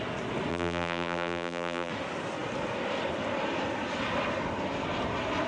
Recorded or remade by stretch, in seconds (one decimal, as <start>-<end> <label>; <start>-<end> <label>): 0.0-0.5 recorded; 0.5-1.9 remade; 1.9-5.5 recorded